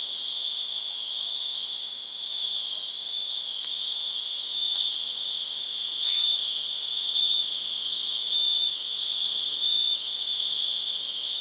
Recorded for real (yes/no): no